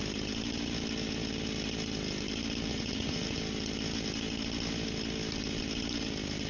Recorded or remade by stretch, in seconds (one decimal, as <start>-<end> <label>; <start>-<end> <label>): 0.0-2.7 recorded; 2.7-3.4 remade; 3.4-6.5 recorded